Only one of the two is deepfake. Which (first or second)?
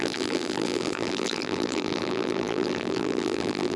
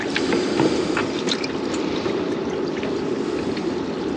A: first